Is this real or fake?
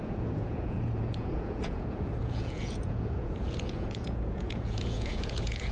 fake